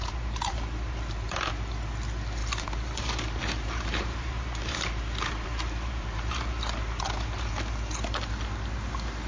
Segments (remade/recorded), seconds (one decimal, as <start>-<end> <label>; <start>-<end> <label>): 0.0-1.5 remade; 1.5-2.4 recorded; 2.4-7.5 remade; 7.5-9.3 recorded